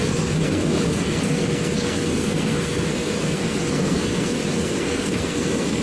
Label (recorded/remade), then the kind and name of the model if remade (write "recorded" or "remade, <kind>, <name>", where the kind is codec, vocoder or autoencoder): remade, codec, SNAC